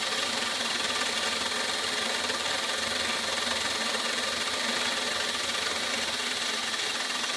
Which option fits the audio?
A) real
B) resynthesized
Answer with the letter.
A